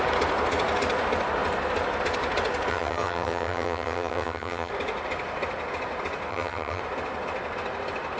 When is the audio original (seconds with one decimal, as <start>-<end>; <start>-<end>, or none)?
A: 0.0-2.7; 4.7-6.3; 6.8-8.2